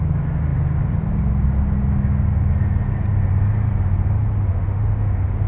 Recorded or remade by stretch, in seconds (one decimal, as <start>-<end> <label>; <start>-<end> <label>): 0.0-4.5 recorded; 4.5-5.1 remade; 5.1-5.5 recorded